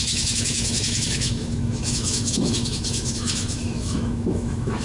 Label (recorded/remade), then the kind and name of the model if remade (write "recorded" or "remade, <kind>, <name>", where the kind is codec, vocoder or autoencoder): remade, autoencoder, DAC-VAE